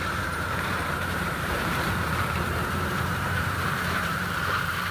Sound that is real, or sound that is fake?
fake